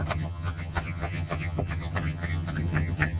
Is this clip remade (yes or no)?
yes